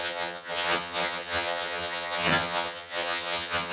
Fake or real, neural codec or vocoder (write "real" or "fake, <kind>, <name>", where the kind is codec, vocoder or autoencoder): fake, vocoder, HiFi-GAN